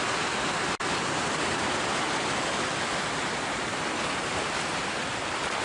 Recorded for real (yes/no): yes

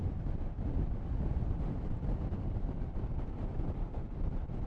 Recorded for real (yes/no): no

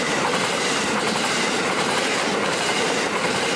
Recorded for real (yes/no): no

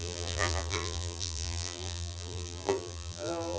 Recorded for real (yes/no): no